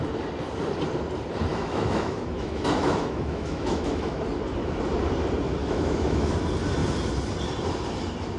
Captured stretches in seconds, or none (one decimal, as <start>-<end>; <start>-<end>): 0.0-1.5; 4.2-5.6; 6.3-8.4